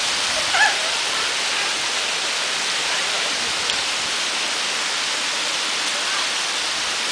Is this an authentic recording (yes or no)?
yes